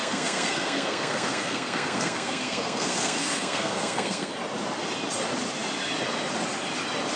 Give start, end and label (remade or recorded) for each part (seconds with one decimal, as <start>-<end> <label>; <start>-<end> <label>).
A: 0.0-4.3 remade; 4.3-7.2 recorded